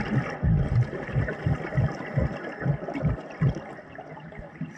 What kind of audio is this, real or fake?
real